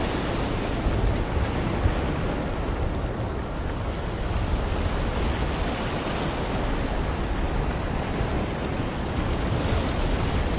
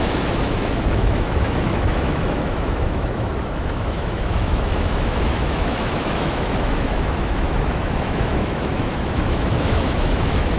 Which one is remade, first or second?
second